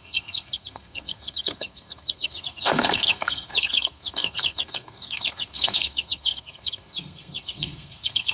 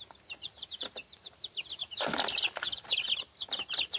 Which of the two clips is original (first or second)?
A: second